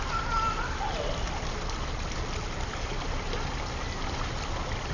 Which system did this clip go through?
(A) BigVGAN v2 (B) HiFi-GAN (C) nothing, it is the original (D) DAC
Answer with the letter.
C